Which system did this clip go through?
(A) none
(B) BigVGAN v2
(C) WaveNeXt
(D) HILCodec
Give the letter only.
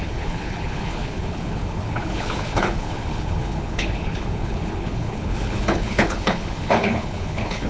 D